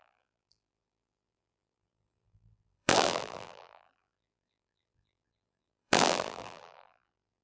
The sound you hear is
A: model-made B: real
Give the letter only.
A